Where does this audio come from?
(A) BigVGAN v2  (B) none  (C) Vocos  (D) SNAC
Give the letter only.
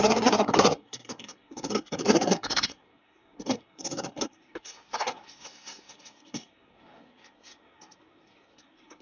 D